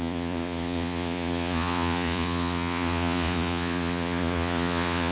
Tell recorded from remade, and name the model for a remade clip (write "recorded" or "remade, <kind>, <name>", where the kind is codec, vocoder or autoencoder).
remade, vocoder, Vocos